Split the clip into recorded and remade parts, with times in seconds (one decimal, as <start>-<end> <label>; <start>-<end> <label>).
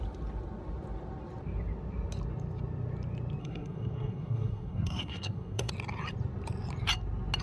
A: 0.0-3.4 recorded; 3.4-5.7 remade; 5.7-7.4 recorded